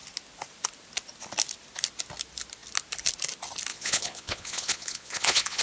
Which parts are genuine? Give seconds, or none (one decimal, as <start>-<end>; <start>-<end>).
0.0-3.7